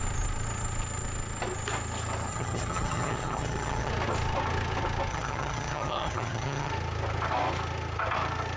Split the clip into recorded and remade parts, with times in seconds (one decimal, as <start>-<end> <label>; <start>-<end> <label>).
0.0-2.3 recorded; 2.3-3.9 remade; 3.9-5.1 recorded; 5.1-6.7 remade; 6.7-8.6 recorded